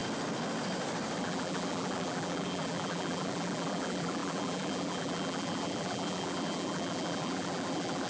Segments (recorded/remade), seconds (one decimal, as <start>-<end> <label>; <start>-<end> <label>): 0.0-1.2 recorded; 1.2-8.1 remade